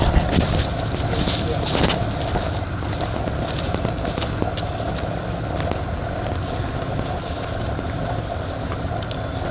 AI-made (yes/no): no